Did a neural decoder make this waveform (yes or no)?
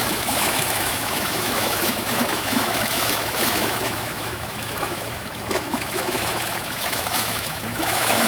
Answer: yes